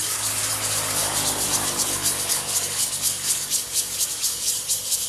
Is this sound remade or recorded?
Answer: remade